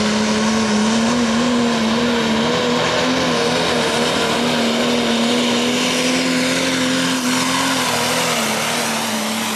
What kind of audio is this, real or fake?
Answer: real